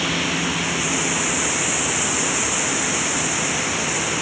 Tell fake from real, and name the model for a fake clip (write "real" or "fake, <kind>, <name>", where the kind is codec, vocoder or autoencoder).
real